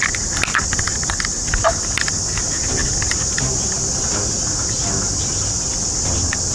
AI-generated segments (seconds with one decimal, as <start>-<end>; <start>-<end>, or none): none